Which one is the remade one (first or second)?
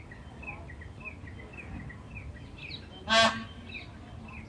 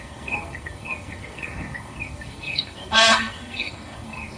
second